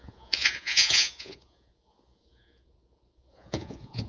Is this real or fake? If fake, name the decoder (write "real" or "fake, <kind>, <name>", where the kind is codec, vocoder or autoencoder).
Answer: fake, vocoder, Vocos